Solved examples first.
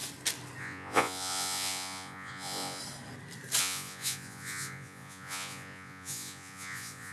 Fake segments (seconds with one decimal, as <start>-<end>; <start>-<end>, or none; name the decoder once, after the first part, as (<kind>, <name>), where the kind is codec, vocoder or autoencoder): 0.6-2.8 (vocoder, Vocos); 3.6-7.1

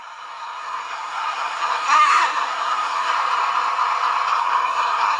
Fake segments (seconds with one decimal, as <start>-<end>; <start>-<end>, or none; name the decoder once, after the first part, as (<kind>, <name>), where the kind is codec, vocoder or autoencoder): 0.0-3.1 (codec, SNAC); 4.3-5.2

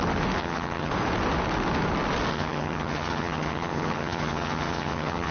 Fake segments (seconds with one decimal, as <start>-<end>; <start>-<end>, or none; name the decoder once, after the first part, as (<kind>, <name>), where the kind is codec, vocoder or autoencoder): 0.4-0.9 (vocoder, HiFi-GAN); 2.3-5.3

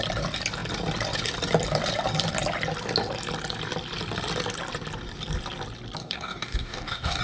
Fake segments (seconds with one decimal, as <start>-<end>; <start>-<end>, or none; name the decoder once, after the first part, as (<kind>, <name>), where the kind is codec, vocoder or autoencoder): 6.0-7.2 (codec, DAC)

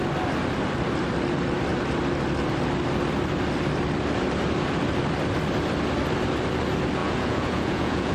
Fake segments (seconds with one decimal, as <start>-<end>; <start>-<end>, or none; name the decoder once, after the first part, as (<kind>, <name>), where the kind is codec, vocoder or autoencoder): 7.0-8.1 (vocoder, Vocos)